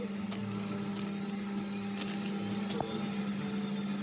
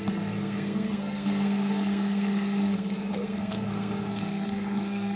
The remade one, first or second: second